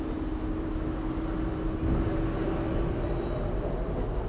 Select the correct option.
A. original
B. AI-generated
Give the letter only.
A